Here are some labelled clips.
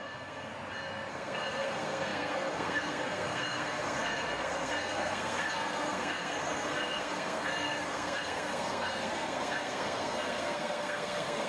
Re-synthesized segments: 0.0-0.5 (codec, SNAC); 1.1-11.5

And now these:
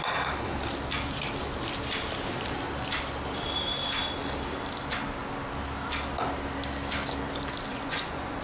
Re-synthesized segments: 7.7-8.4 (vocoder, Vocos)

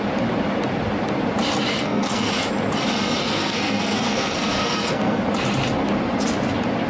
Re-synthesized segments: 1.7-2.3 (codec, SNAC); 3.2-5.2

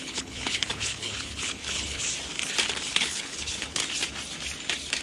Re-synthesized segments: 0.0-2.0 (codec, HILCodec); 2.9-3.8

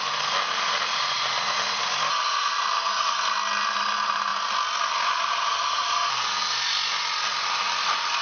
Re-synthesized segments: none